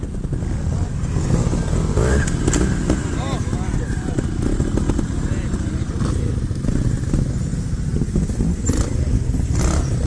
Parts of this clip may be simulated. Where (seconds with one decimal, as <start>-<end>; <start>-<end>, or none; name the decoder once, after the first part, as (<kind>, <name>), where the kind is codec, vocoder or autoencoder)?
none